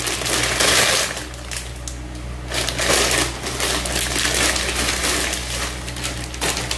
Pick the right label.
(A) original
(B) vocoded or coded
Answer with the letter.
A